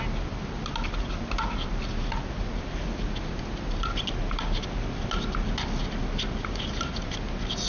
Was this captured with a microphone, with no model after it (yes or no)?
yes